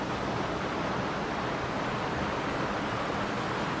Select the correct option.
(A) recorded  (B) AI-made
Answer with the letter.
A